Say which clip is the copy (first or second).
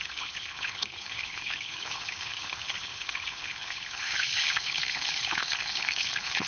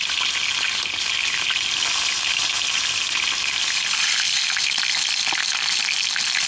first